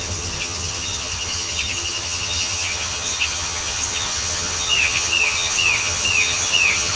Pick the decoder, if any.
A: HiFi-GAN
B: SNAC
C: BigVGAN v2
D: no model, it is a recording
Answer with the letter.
A